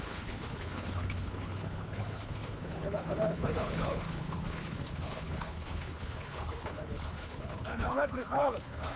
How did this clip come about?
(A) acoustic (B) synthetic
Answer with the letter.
B